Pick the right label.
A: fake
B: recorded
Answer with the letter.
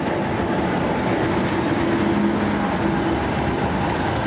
B